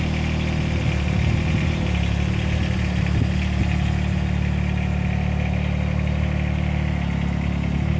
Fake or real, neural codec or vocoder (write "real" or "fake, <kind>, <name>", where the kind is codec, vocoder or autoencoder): real